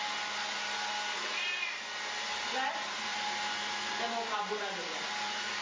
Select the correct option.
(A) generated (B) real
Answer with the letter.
B